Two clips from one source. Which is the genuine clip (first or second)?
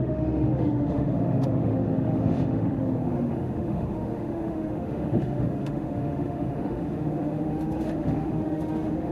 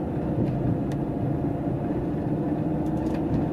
second